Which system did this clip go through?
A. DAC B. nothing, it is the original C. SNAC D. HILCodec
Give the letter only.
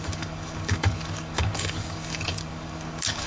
A